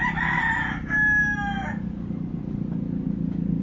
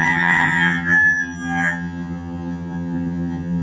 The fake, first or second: second